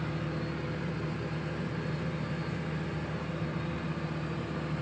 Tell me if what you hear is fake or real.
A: real